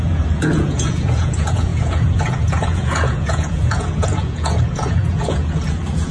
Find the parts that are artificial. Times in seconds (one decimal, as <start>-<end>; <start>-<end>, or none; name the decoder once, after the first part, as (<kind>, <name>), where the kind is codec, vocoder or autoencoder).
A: 0.0-6.1 (vocoder, Vocos)